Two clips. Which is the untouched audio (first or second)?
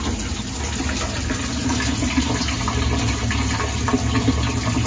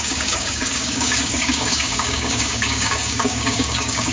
first